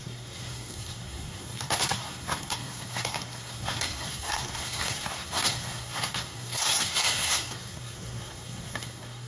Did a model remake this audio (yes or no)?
yes